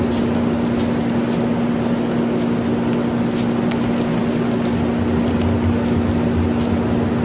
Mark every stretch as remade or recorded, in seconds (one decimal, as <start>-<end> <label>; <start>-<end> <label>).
0.0-7.2 recorded